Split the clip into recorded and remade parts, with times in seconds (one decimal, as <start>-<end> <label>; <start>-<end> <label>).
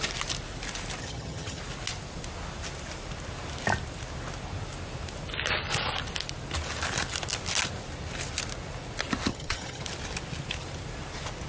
0.0-1.0 recorded; 1.0-1.6 remade; 1.6-9.3 recorded; 9.3-9.8 remade; 9.8-11.5 recorded